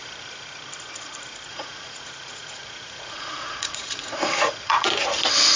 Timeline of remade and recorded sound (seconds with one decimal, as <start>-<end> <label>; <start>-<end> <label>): 0.0-1.5 recorded; 1.5-4.9 remade; 4.9-5.6 recorded